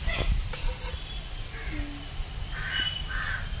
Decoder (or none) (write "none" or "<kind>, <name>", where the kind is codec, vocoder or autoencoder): none